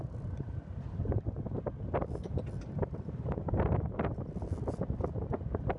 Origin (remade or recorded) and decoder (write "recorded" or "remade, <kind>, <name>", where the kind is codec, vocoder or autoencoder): recorded